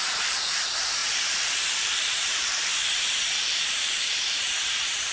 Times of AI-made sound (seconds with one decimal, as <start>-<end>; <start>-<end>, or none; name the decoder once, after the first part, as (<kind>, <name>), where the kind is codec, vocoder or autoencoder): 0.0-5.1 (vocoder, BigVGAN v2)